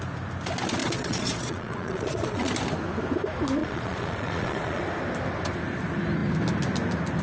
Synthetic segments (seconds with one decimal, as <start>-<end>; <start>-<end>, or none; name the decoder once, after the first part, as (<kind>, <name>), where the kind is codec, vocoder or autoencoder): 0.8-2.5 (vocoder, Vocos); 3.6-4.8